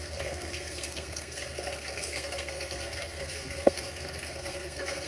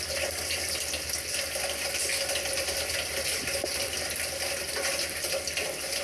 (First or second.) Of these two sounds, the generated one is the first